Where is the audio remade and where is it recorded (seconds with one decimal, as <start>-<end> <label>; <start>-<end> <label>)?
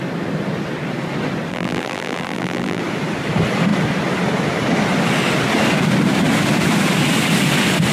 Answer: 0.0-1.5 recorded; 1.5-2.8 remade; 2.8-7.9 recorded